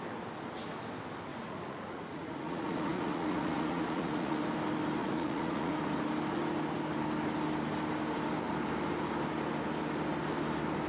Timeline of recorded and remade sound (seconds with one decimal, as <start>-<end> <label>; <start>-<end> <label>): 0.0-1.3 recorded; 1.3-4.4 remade; 4.4-5.0 recorded; 5.0-5.7 remade; 5.7-10.9 recorded